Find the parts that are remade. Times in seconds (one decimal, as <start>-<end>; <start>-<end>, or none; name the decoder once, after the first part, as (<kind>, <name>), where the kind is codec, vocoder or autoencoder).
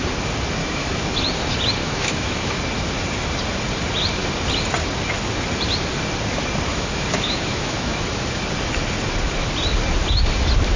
0.6-1.2 (autoencoder, DAC-VAE); 1.8-2.6; 6.7-8.4